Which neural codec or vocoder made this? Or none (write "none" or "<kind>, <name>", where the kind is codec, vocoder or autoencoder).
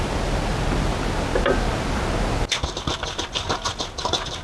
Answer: none